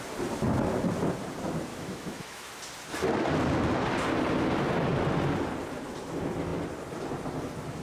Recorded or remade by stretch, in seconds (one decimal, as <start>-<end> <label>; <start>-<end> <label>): 0.0-1.7 recorded; 1.7-2.5 remade; 2.5-7.8 recorded